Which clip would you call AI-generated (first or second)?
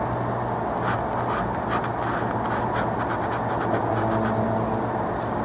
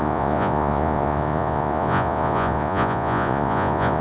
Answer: second